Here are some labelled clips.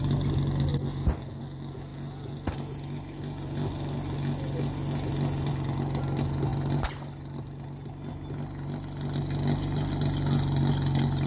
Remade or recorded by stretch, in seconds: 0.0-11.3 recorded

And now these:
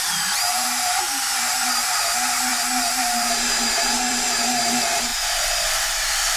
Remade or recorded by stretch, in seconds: 0.0-5.1 remade; 5.1-5.7 recorded; 5.7-6.4 remade

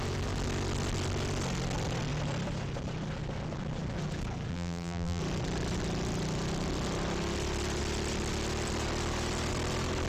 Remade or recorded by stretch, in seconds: 0.0-4.5 recorded; 4.5-5.2 remade; 5.2-10.1 recorded